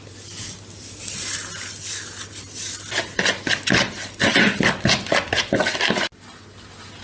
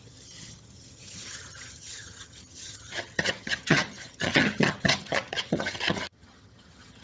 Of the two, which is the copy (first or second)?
second